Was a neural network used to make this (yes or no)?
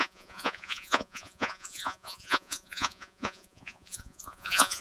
yes